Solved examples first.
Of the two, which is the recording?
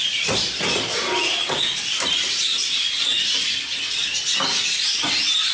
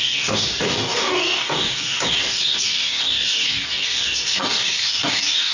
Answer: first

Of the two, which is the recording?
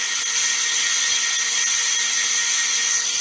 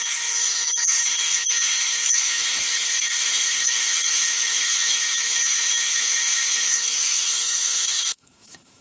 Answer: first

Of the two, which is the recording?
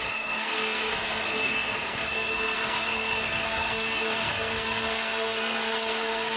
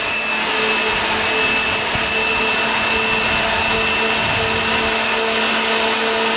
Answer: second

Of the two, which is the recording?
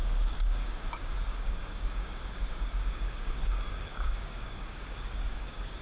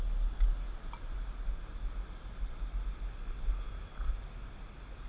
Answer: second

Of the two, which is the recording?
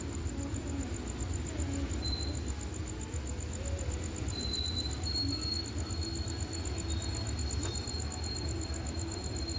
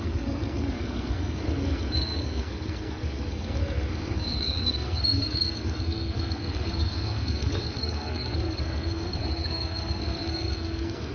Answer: first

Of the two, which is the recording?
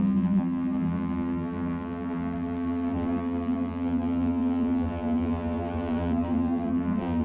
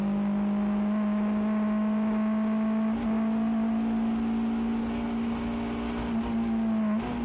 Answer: second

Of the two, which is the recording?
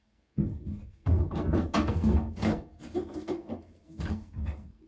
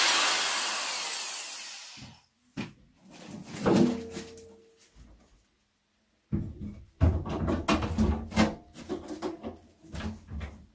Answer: second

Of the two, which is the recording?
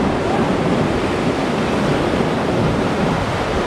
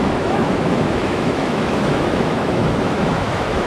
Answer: first